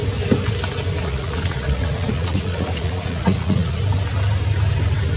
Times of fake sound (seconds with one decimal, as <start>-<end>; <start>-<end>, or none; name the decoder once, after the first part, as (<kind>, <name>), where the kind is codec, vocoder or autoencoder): 1.0-3.8 (vocoder, Vocos)